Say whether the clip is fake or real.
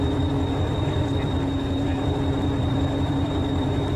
fake